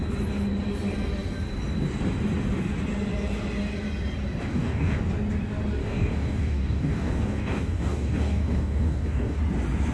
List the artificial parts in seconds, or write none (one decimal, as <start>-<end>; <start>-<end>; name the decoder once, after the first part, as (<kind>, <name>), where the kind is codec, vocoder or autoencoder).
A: 4.5-5.0 (codec, DAC); 5.8-9.4